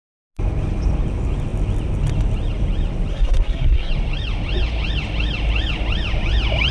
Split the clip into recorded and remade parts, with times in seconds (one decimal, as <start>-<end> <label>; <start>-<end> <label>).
0.0-3.1 recorded; 3.1-3.9 remade; 3.9-6.7 recorded